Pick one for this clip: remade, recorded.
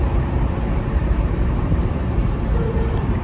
remade